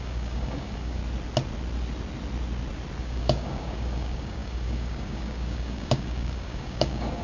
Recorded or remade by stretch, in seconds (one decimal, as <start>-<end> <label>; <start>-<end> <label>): 0.0-1.0 remade; 1.0-3.0 recorded; 3.0-7.2 remade